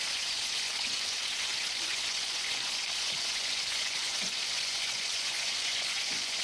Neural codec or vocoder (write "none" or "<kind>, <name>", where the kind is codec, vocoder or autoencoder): vocoder, Vocos